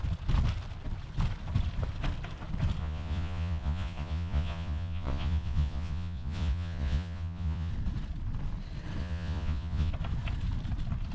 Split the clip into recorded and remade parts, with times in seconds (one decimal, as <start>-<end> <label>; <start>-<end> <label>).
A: 0.0-2.8 recorded; 2.8-7.7 remade; 7.7-9.0 recorded; 9.0-9.9 remade; 9.9-11.1 recorded